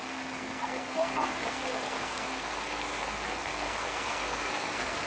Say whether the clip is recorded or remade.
remade